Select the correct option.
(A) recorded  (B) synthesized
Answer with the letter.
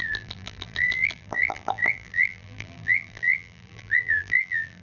B